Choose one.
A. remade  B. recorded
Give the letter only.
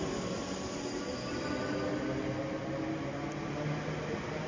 B